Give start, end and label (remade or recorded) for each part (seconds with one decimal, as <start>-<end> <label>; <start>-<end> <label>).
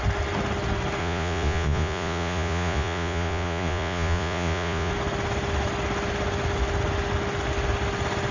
0.0-1.0 recorded; 1.0-4.9 remade; 4.9-8.3 recorded